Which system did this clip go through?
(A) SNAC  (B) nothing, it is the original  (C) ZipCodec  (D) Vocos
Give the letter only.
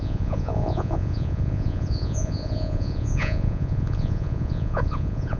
D